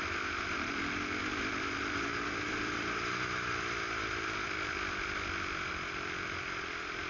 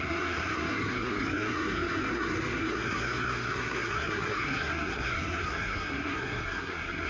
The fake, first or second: second